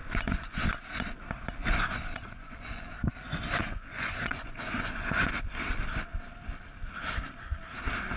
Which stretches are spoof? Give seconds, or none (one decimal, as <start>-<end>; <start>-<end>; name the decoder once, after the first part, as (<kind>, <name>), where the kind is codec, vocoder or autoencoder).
0.0-0.6 (vocoder, Vocos); 2.1-5.3